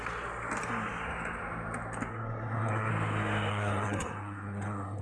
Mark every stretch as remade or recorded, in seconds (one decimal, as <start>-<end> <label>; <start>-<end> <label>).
0.0-2.1 recorded; 2.1-2.9 remade; 2.9-3.5 recorded; 3.5-5.0 remade

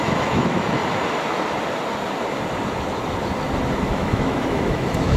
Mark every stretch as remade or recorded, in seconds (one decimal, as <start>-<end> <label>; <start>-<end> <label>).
0.0-0.8 remade; 0.8-3.9 recorded; 3.9-5.2 remade

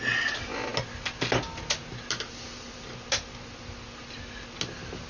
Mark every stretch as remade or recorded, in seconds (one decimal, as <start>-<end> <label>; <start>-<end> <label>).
0.0-5.1 recorded

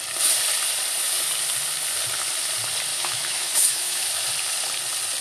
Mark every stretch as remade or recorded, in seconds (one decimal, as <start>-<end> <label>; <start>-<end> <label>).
0.0-2.9 recorded; 2.9-4.1 remade; 4.1-5.2 recorded

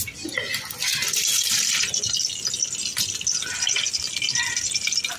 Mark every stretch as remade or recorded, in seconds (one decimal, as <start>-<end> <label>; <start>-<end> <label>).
0.0-5.2 recorded

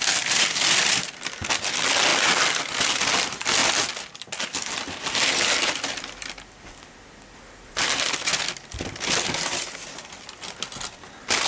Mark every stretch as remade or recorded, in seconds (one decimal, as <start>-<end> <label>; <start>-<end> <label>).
0.0-11.5 recorded